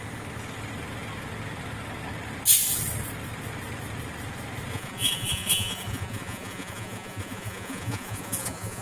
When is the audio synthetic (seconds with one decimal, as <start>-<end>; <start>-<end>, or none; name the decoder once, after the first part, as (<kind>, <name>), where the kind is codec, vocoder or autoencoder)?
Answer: 4.7-8.8 (vocoder, Vocos)